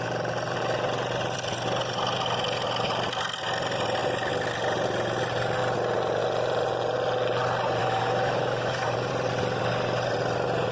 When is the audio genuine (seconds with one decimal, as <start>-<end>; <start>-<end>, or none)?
0.0-7.8; 9.1-10.7